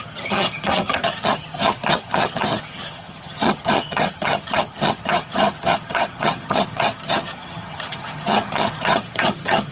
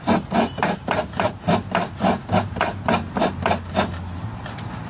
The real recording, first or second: second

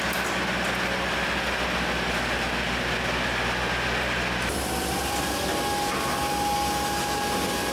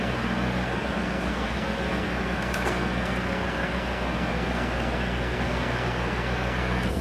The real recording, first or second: first